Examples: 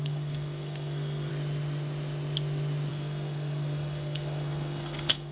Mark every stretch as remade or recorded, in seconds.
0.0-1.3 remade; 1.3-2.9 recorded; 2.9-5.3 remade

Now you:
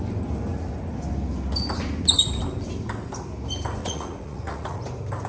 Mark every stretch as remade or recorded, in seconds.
0.0-3.8 recorded; 3.8-4.8 remade; 4.8-5.3 recorded